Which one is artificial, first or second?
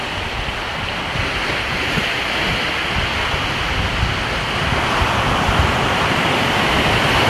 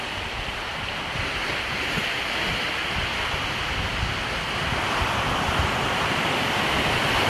second